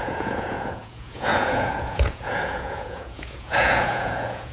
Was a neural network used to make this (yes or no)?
yes